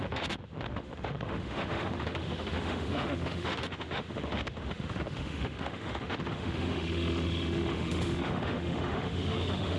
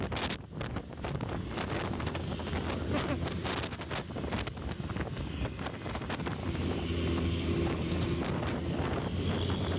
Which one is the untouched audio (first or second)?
second